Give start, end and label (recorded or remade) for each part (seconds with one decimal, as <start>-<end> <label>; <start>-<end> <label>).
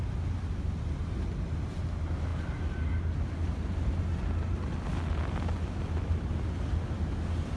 0.0-7.6 recorded